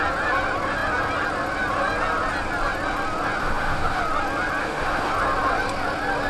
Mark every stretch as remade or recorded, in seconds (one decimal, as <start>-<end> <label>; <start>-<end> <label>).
0.0-3.4 recorded; 3.4-4.0 remade; 4.0-4.6 recorded; 4.6-5.1 remade; 5.1-6.3 recorded